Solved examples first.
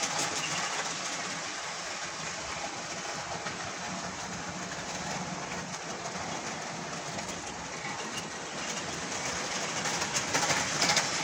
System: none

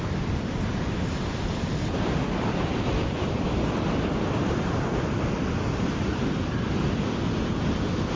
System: vocoder, BigVGAN v2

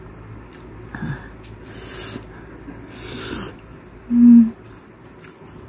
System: none